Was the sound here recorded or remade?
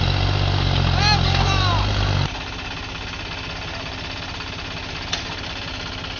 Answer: recorded